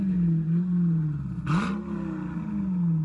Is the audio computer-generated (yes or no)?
no